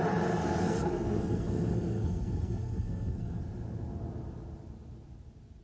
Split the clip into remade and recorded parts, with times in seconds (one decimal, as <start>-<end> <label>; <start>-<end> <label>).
0.0-0.4 recorded; 0.4-3.4 remade; 3.4-5.6 recorded